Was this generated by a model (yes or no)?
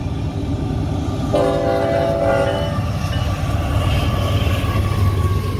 no